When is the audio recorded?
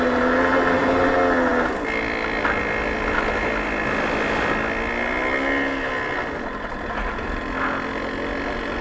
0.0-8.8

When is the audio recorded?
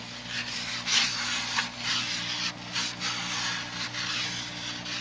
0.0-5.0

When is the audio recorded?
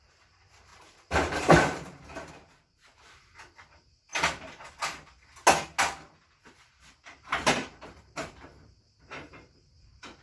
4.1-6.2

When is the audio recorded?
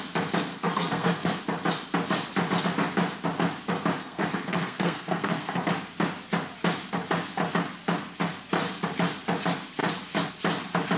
0.0-0.5; 1.4-4.0; 5.7-11.0